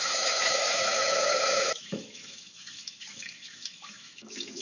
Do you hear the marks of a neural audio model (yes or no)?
yes